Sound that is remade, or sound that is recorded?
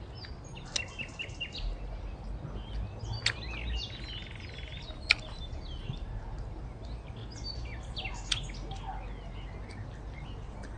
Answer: recorded